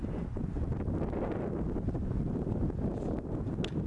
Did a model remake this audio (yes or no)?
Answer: no